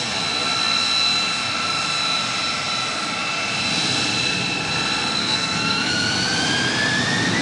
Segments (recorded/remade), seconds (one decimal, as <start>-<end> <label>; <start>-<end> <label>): 0.0-5.2 recorded; 5.2-5.9 remade; 5.9-7.4 recorded